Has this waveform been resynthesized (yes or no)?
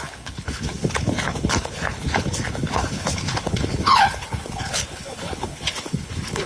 yes